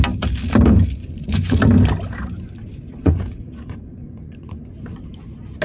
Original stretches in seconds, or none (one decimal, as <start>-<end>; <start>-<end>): 0.0-1.0; 1.6-2.6; 4.6-5.6

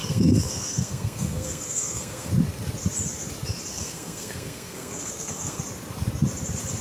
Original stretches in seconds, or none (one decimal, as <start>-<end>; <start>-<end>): 2.3-3.7; 5.6-6.8

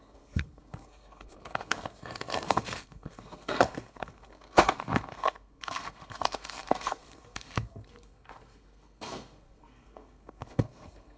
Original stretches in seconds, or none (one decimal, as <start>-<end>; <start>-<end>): none

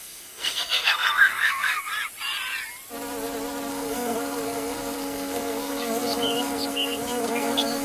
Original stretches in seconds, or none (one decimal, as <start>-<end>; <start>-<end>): 1.9-3.7

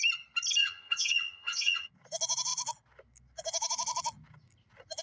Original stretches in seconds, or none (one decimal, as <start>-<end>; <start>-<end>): 0.0-0.6; 1.9-5.0

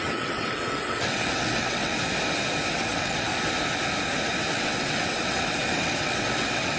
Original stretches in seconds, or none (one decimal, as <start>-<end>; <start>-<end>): 1.9-2.7; 3.3-4.5

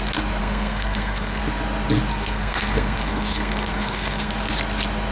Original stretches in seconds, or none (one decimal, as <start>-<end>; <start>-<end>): 0.0-0.4; 1.4-2.1; 4.3-5.1